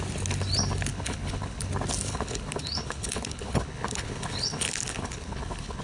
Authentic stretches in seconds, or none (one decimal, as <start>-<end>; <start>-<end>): 0.0-0.9; 1.7-2.1